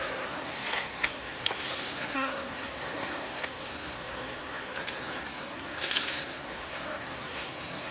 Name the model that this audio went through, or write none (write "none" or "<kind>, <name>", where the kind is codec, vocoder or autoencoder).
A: codec, SNAC